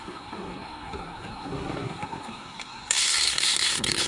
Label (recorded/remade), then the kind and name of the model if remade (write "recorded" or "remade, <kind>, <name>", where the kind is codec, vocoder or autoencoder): remade, codec, SNAC